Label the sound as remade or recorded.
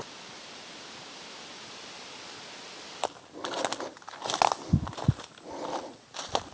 recorded